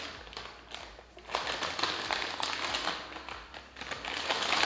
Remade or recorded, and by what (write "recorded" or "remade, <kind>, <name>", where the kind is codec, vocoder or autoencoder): recorded